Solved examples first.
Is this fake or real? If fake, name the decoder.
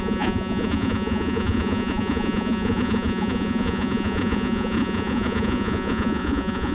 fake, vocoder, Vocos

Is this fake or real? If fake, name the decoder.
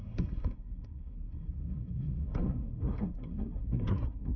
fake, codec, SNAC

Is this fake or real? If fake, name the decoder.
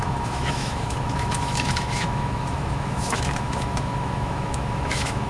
fake, autoencoder, DAC-VAE